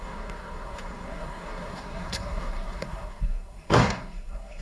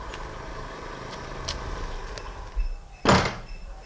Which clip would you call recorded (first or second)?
second